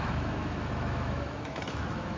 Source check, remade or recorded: remade